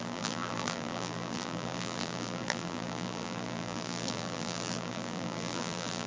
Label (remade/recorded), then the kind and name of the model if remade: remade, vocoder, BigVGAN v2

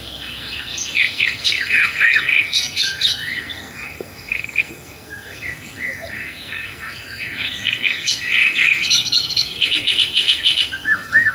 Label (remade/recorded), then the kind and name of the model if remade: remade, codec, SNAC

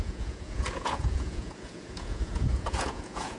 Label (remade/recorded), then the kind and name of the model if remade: remade, vocoder, Vocos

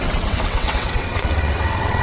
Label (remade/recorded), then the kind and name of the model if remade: remade, vocoder, WaveNeXt